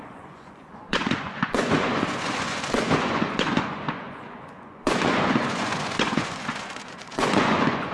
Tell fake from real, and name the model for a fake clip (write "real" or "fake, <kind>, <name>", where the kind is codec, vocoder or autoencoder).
fake, vocoder, Vocos